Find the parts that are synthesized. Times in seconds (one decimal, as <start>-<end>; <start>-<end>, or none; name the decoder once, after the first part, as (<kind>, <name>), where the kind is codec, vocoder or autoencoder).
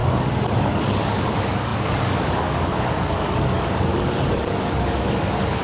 0.0-5.6 (codec, DAC)